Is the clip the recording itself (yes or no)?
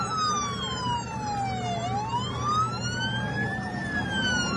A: yes